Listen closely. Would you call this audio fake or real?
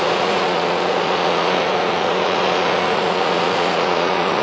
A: fake